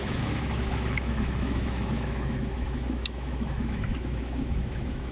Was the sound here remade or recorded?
remade